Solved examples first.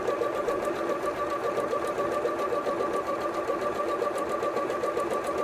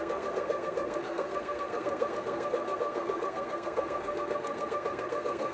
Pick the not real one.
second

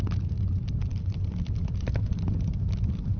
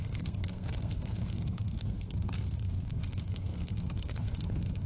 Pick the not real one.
second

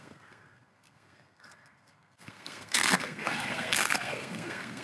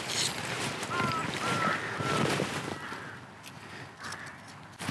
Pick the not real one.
first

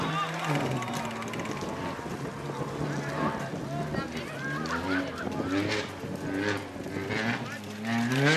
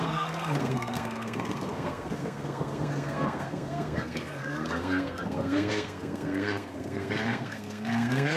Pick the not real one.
second